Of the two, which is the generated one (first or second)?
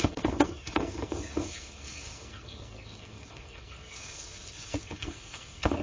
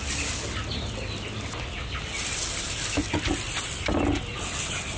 first